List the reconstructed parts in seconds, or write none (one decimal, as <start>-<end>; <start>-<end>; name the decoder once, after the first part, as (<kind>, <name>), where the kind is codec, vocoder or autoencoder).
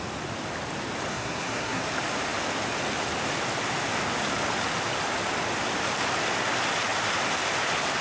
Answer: 1.1-1.8 (codec, SNAC)